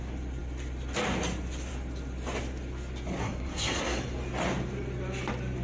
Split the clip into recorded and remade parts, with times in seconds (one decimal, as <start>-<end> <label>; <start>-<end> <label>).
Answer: 0.0-3.2 recorded; 3.2-4.0 remade; 4.0-5.6 recorded

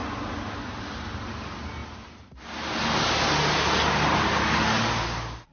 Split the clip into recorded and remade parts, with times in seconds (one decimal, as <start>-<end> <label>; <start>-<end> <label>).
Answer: 0.0-5.5 recorded

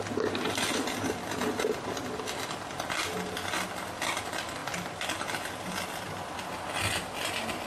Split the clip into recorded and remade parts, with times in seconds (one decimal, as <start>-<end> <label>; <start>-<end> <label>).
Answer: 0.0-7.7 recorded

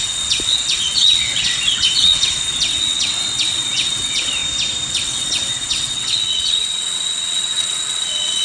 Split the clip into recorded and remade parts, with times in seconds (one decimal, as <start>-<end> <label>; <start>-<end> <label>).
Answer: 0.0-4.4 remade; 4.4-4.9 recorded; 4.9-8.4 remade

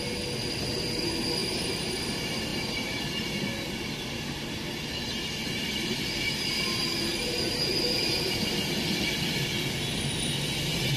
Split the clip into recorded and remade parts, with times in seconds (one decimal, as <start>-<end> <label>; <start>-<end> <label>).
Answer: 0.0-1.4 recorded; 1.4-2.0 remade; 2.0-2.5 recorded; 2.5-3.0 remade; 3.0-7.1 recorded; 7.1-8.1 remade; 8.1-11.0 recorded

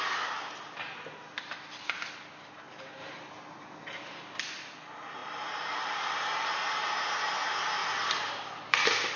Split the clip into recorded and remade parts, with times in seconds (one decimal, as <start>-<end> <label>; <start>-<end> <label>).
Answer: 0.0-7.8 recorded; 7.8-8.6 remade; 8.6-9.2 recorded

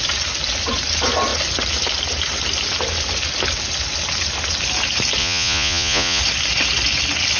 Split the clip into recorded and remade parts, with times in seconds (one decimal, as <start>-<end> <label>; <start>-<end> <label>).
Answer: 0.0-5.2 recorded; 5.2-6.2 remade; 6.2-7.4 recorded

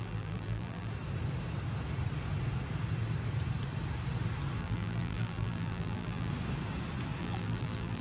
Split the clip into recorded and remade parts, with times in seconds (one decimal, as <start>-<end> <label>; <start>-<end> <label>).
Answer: 0.0-0.9 remade; 0.9-4.6 recorded; 4.6-6.3 remade; 6.3-7.2 recorded; 7.2-8.0 remade